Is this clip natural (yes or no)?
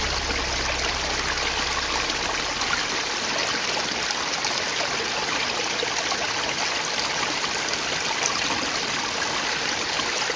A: yes